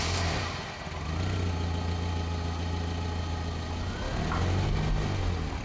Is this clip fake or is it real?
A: real